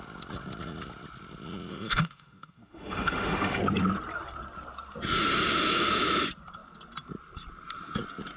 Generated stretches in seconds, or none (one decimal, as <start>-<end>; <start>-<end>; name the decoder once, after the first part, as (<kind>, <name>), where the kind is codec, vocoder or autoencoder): 1.7-3.6 (autoencoder, DAC-VAE)